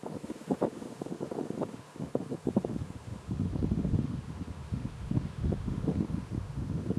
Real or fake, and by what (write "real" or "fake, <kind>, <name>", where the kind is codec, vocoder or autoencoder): fake, autoencoder, DAC-VAE